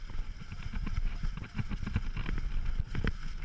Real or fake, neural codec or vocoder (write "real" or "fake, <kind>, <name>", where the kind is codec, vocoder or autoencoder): real